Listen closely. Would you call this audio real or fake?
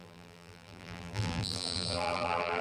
fake